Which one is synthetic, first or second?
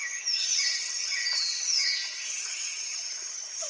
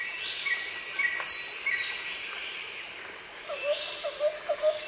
first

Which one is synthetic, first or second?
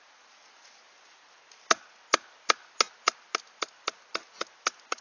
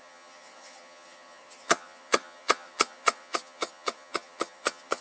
second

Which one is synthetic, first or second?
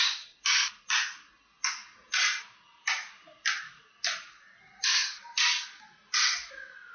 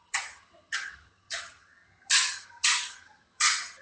second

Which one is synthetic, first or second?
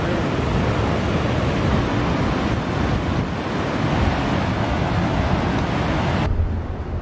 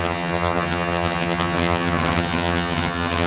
second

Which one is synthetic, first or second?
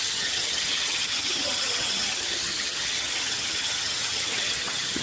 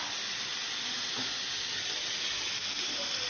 first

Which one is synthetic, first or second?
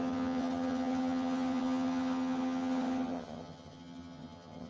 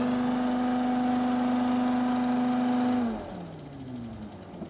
first